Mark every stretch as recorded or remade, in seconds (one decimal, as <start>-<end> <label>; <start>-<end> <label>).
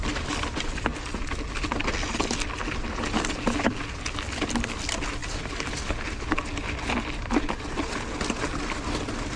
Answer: 0.0-9.4 recorded